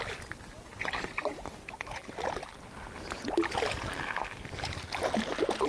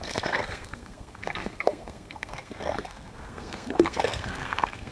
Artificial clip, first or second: second